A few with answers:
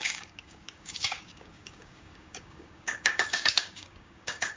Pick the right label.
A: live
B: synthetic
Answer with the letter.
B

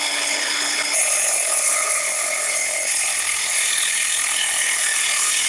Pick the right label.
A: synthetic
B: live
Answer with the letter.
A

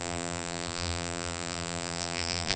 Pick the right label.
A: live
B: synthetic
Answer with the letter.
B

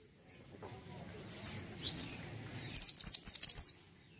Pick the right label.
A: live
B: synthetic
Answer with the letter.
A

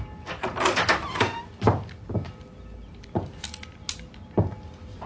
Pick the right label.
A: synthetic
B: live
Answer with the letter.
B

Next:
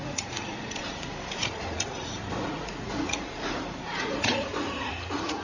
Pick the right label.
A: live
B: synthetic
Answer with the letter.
B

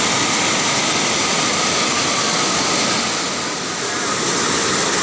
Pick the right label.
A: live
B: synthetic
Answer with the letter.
A